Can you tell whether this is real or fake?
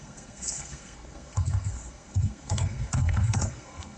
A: fake